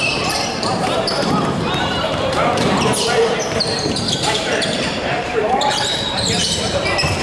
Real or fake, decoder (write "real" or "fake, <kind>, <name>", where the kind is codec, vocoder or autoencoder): fake, vocoder, BigVGAN v2